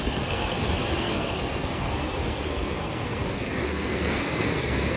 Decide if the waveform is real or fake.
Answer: fake